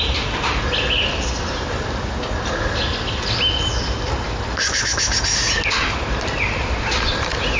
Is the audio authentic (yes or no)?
yes